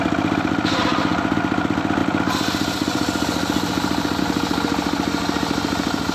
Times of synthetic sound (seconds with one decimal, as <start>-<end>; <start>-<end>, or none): none